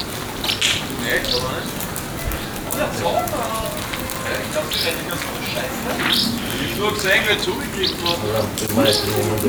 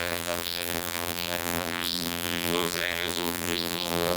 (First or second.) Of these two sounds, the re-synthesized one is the second